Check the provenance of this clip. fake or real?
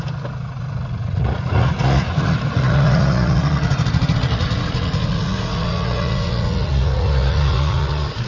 fake